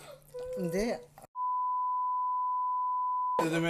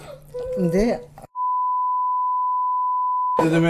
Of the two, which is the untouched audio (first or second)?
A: first